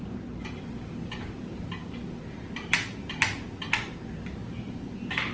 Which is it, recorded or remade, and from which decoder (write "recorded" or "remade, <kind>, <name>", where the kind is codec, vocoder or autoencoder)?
recorded